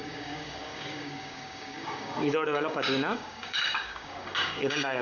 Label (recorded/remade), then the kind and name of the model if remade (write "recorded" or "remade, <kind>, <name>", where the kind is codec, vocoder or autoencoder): remade, codec, DAC